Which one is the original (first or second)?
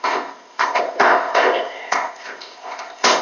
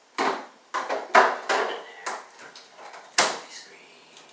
second